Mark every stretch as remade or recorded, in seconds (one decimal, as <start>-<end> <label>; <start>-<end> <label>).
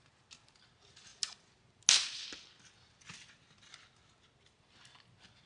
0.0-5.5 recorded